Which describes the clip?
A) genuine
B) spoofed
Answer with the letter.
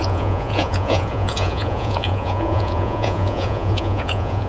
B